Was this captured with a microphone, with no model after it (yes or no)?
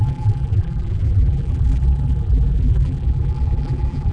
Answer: no